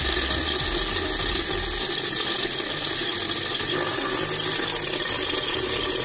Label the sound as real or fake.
real